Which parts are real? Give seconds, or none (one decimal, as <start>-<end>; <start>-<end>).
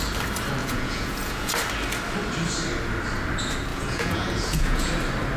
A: 0.0-0.6; 1.5-3.7; 4.9-5.4